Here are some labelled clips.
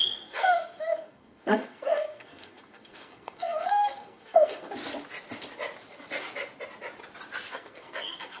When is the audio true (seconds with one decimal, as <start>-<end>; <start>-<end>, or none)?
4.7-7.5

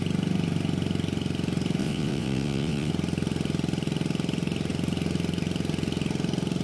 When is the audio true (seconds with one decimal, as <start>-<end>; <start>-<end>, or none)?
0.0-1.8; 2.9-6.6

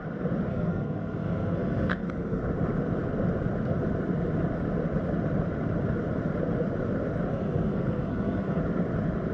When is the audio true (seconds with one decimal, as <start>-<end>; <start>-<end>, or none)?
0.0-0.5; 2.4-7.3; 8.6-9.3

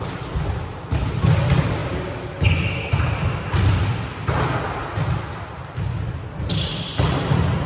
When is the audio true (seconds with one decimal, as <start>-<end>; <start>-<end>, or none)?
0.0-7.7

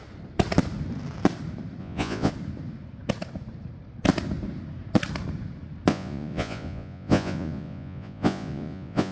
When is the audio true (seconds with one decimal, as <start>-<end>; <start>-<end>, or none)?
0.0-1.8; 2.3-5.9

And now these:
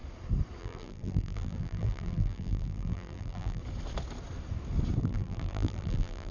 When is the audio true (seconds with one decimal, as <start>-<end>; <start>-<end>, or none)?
0.0-0.6; 3.6-5.0

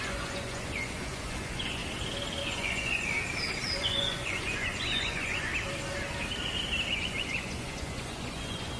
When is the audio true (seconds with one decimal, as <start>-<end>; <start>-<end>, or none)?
1.8-2.4; 3.1-3.8; 5.5-6.9